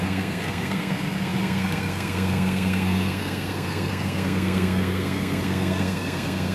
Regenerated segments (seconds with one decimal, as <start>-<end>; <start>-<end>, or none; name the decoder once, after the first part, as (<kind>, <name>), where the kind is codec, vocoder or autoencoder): 0.0-6.5 (codec, SNAC)